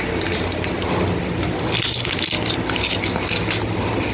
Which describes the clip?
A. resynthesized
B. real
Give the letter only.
B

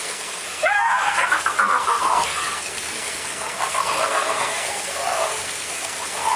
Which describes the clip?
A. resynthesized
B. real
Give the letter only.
A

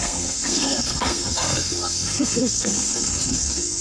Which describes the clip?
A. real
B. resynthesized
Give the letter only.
B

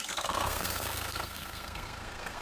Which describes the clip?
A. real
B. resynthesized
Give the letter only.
B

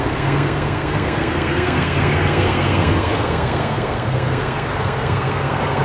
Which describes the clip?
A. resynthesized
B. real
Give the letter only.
A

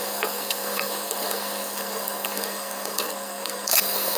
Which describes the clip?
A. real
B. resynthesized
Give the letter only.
B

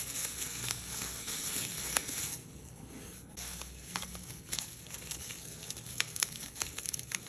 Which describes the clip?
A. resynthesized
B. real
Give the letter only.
A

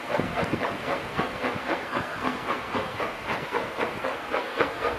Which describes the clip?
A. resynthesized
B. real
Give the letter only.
A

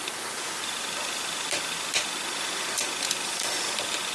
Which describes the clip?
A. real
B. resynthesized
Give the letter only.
A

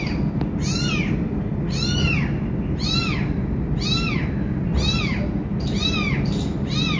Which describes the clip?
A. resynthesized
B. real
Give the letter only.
B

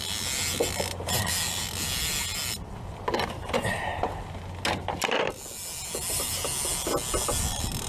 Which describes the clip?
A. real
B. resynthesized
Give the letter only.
A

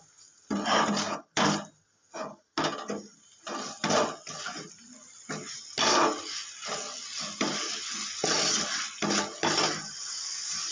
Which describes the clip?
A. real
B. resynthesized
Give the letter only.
A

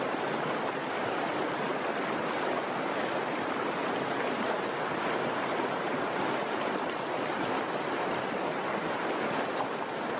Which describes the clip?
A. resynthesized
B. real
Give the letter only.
B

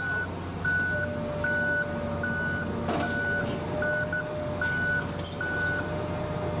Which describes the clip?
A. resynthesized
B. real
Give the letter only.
B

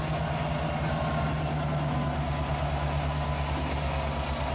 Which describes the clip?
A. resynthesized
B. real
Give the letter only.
B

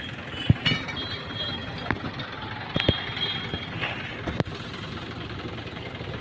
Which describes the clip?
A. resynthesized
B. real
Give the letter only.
B